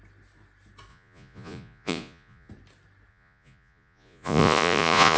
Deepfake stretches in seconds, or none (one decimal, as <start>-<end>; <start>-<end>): 0.9-2.5; 3.1-5.2